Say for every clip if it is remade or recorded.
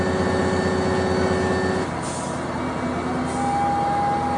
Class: recorded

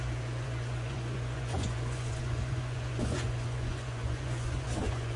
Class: remade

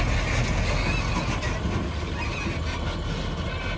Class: recorded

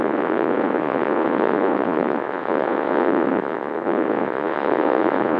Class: remade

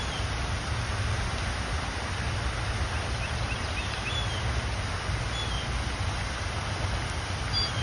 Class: recorded